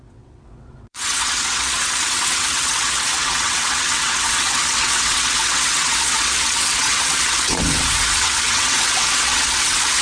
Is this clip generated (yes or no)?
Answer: yes